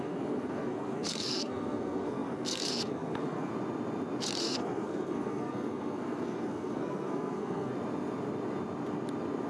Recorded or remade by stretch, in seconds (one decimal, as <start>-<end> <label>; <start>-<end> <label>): 0.0-3.5 remade; 3.5-4.4 recorded; 4.4-7.7 remade; 7.7-9.5 recorded

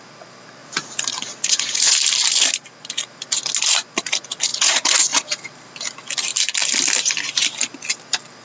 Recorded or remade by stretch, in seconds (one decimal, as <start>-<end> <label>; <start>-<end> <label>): 0.0-0.6 recorded; 0.6-2.0 remade; 2.0-4.5 recorded; 4.5-5.2 remade; 5.2-8.4 recorded